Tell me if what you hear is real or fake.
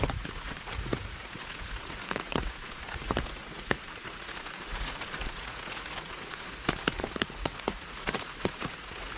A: fake